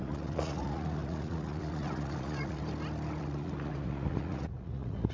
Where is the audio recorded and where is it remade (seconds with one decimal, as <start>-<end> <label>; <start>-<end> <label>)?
0.0-2.6 remade; 2.6-3.2 recorded; 3.2-5.1 remade